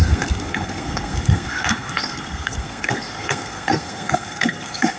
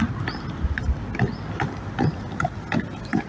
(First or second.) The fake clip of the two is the first